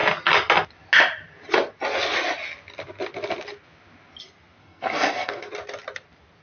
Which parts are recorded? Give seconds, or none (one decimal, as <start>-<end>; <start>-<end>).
0.0-4.6; 5.5-6.4